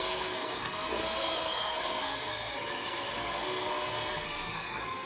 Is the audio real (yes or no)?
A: no